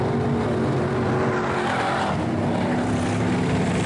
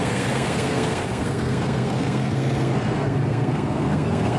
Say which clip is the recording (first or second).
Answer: first